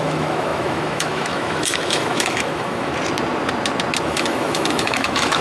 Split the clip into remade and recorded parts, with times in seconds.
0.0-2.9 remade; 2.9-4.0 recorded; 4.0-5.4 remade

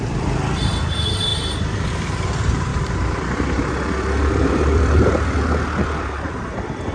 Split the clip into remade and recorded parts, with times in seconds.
0.0-6.9 remade

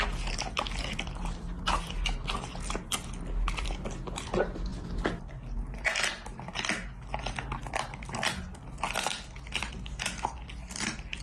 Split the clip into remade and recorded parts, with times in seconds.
0.0-11.2 recorded

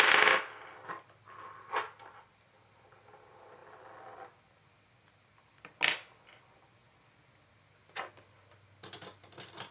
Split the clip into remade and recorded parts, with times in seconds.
0.0-9.7 recorded

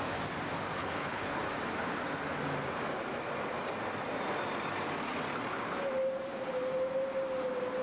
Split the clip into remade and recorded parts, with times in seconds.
0.0-0.8 recorded; 0.8-1.4 remade; 1.4-7.8 recorded

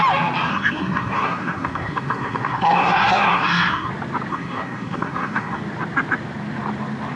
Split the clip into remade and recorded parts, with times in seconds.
0.0-0.5 recorded; 0.5-3.9 remade; 3.9-4.3 recorded; 4.3-5.6 remade; 5.6-7.2 recorded

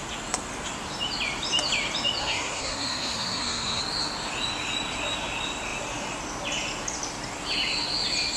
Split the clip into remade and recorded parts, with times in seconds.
0.0-2.2 recorded; 2.2-3.8 remade; 3.8-8.4 recorded

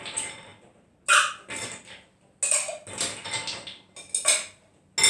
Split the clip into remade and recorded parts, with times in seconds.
0.0-5.1 recorded